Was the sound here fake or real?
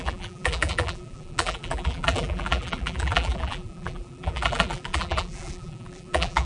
fake